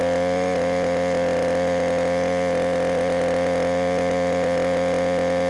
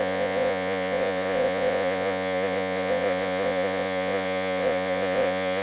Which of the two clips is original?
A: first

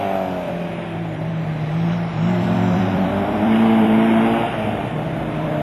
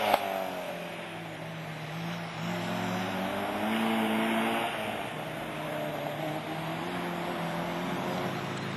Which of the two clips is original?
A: second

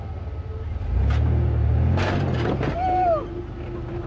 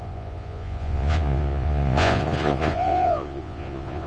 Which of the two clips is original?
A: first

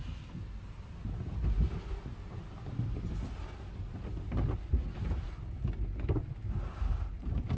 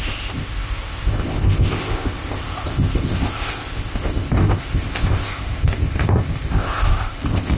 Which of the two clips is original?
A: first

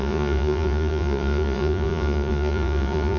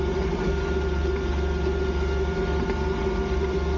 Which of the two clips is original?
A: second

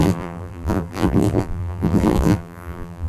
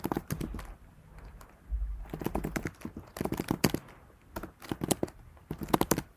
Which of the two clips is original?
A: second